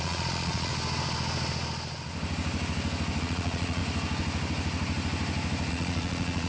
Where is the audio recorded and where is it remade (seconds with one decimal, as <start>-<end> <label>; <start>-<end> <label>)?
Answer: 0.0-0.7 remade; 0.7-3.2 recorded; 3.2-3.8 remade; 3.8-5.7 recorded; 5.7-6.5 remade